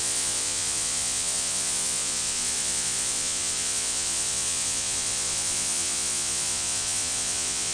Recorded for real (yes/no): no